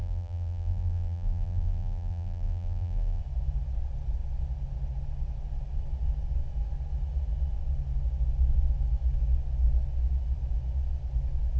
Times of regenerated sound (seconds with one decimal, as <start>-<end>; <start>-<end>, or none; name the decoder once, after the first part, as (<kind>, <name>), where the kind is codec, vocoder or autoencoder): 0.0-3.2 (vocoder, BigVGAN v2)